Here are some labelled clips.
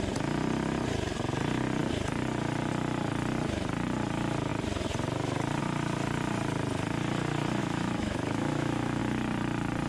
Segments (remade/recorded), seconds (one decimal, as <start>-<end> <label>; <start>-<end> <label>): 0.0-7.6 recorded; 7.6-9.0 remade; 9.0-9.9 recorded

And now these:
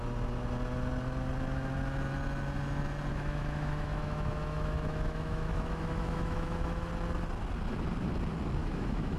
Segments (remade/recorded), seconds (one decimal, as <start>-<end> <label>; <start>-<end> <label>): 0.0-3.1 recorded; 3.1-6.9 remade; 6.9-8.6 recorded; 8.6-9.2 remade

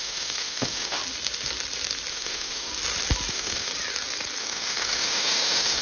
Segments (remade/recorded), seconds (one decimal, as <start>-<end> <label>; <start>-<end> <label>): 0.0-1.0 remade; 1.0-2.1 recorded; 2.1-2.7 remade; 2.7-3.3 recorded; 3.3-3.7 remade; 3.7-4.4 recorded; 4.4-5.8 remade

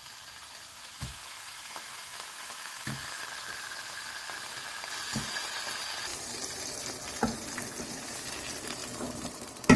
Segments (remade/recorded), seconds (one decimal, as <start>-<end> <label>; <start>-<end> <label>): 0.0-0.7 recorded; 0.7-3.2 remade; 3.2-9.8 recorded